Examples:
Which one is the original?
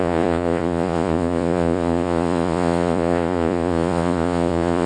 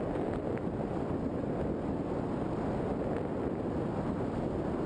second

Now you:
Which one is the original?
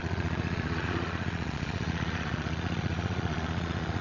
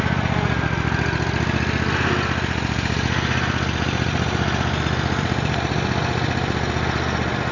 second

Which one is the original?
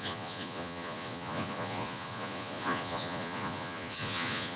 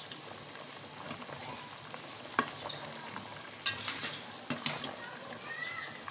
second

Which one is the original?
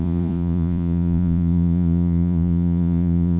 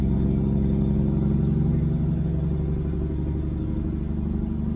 second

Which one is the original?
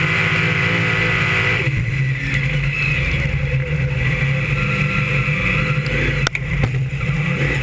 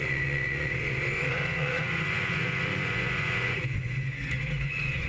first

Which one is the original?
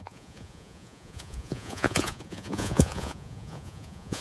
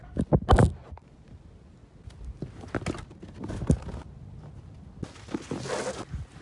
second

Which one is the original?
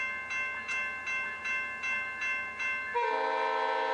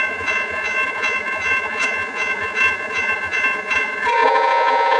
first